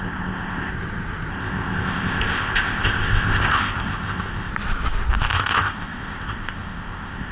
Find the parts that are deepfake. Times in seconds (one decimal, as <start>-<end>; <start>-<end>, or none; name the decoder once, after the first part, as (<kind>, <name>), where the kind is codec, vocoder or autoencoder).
0.0-0.7 (codec, ZipCodec); 1.3-4.5; 5.2-7.3